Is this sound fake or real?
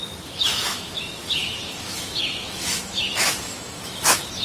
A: fake